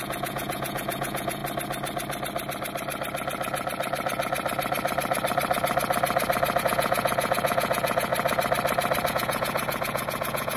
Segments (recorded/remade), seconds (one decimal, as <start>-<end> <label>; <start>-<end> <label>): 0.0-1.4 remade; 1.4-6.6 recorded; 6.6-8.1 remade; 8.1-9.1 recorded; 9.1-10.6 remade